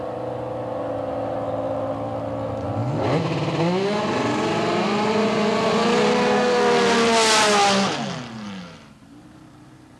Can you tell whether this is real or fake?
real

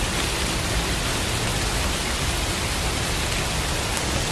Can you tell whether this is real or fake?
real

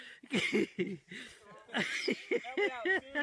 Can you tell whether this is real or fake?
real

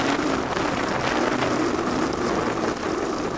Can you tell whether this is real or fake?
real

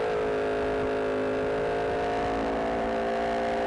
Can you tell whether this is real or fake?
real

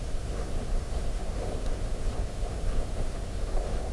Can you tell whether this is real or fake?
fake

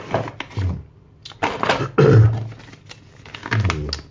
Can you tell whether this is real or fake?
real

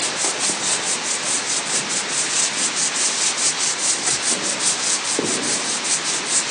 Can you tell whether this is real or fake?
real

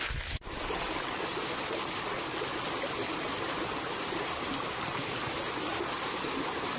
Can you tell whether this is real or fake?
real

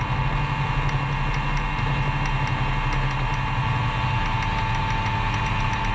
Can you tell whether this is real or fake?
real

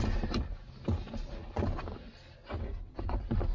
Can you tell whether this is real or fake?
real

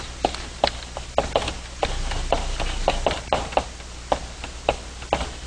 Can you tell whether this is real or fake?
real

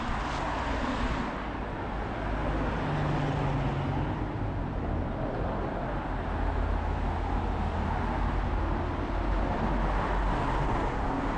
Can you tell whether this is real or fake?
real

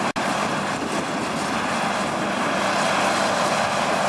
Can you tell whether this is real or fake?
real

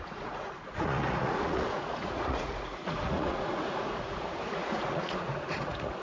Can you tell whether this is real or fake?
fake